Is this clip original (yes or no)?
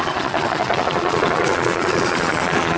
no